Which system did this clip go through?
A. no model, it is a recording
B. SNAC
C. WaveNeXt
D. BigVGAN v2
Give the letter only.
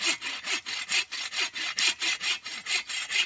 A